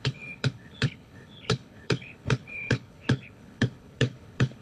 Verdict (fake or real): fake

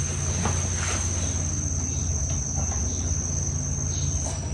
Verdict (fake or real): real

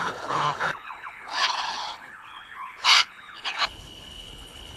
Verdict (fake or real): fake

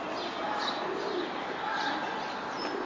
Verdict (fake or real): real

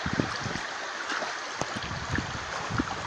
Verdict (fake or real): real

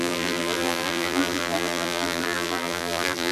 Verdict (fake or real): fake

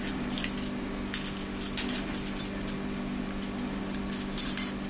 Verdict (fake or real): real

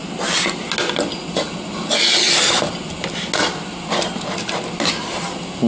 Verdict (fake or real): real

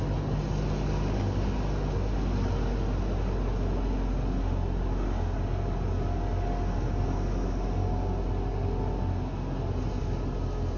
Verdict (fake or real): real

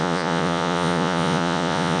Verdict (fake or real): fake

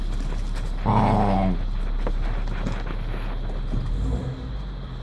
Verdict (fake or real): real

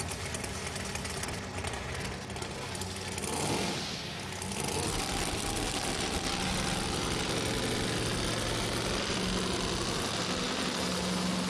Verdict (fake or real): real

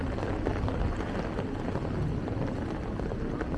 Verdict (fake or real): real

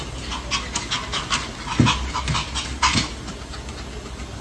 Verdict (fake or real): real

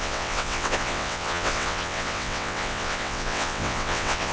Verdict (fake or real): fake